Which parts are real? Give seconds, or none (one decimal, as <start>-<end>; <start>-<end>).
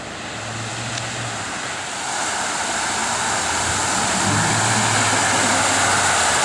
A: 0.0-6.4